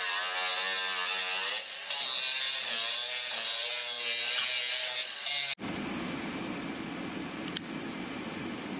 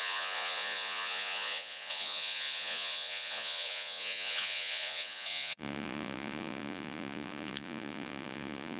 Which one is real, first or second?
first